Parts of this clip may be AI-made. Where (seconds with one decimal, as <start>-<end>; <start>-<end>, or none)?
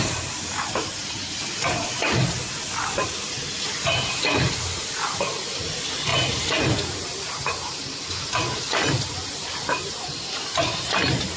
6.1-10.9